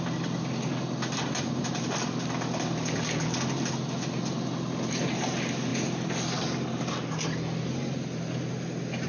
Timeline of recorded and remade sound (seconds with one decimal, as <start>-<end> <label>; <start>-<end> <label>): 0.0-9.1 recorded